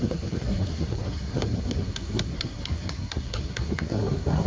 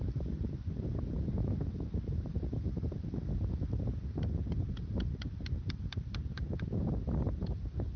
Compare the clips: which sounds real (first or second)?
second